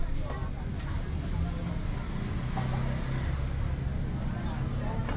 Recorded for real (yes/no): yes